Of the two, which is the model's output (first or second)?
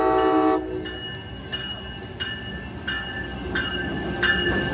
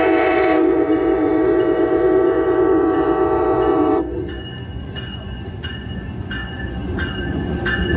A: second